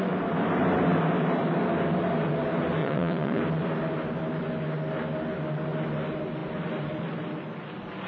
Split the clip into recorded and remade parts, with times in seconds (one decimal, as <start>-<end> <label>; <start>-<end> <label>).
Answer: 0.0-2.8 recorded; 2.8-3.4 remade; 3.4-8.1 recorded